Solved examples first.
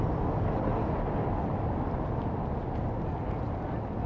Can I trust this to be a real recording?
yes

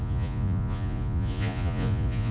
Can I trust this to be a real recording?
no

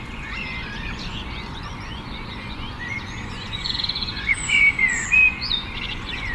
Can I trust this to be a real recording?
no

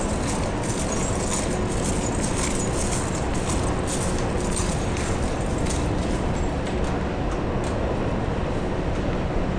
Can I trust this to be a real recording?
yes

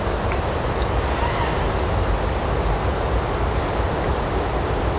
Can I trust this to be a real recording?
yes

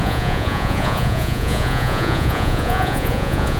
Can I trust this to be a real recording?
no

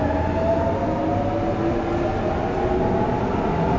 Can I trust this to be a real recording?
yes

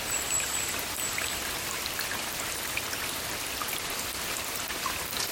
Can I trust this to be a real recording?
yes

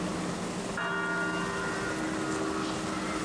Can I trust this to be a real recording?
yes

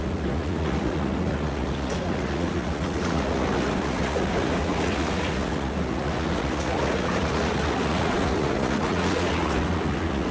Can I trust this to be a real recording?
no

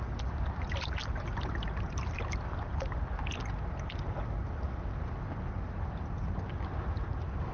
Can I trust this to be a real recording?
yes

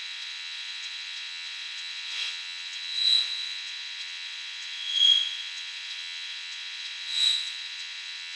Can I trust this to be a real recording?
no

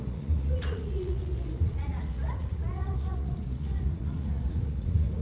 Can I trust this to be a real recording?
no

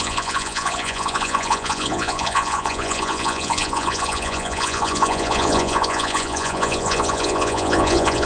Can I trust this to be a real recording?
no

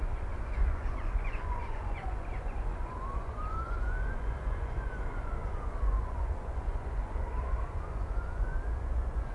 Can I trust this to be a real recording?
no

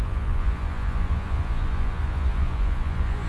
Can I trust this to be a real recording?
no